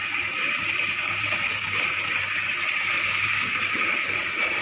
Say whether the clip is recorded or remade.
remade